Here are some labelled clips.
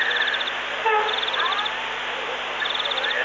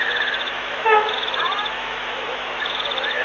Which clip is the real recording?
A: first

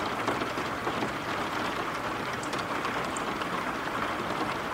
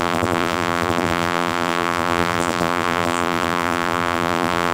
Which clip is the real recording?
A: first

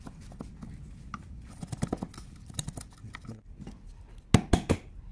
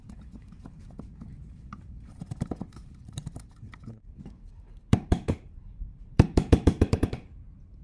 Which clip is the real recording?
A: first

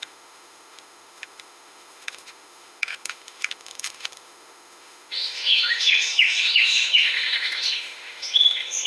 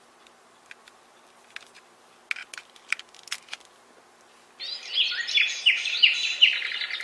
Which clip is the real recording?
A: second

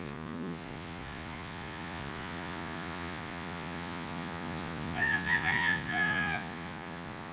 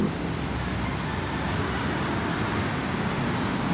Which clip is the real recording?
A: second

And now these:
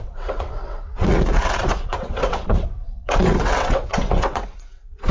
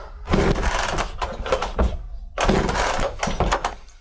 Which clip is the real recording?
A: second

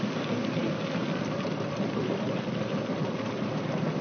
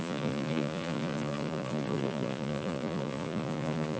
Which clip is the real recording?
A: first